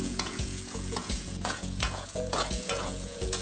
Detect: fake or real fake